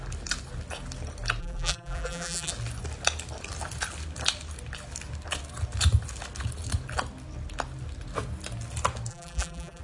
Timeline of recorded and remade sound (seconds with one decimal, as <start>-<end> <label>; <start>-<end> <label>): 0.0-1.4 recorded; 1.4-2.5 remade; 2.5-9.1 recorded; 9.1-9.8 remade